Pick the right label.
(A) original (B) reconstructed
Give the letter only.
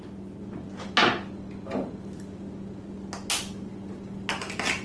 A